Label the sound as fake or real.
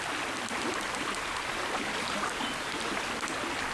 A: real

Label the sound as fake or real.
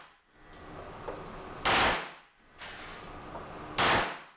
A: real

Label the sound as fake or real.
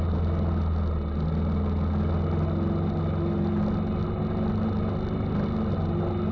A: real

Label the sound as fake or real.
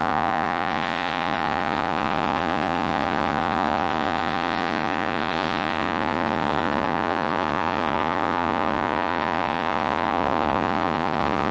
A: fake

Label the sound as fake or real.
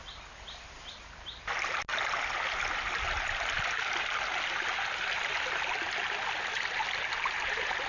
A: real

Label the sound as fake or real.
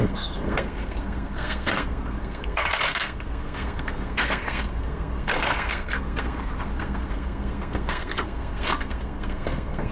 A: fake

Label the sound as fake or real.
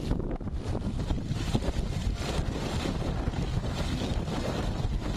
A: real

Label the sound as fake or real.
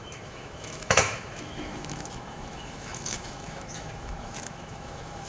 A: fake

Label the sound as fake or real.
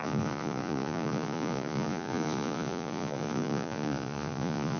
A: fake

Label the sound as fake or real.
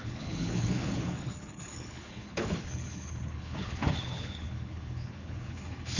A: fake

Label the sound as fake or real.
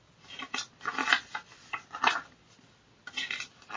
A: real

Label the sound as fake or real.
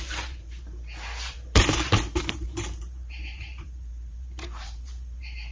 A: fake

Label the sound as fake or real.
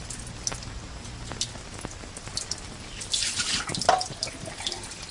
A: real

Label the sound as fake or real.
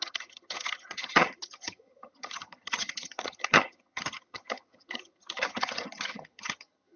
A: fake